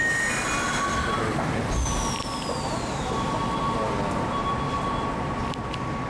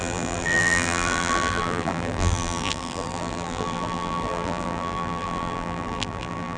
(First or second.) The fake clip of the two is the second